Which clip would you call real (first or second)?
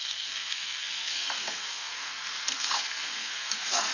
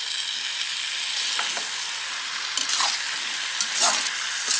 second